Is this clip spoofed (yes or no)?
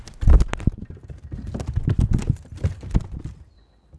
no